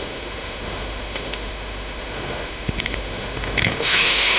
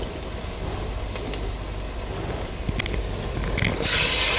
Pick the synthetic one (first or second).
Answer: first